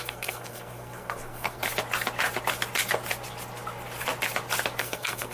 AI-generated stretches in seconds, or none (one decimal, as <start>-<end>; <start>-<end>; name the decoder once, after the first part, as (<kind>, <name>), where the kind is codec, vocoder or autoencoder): 0.0-1.6 (codec, SNAC); 4.8-5.3